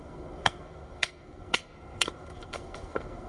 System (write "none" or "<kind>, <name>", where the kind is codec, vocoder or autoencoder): codec, SNAC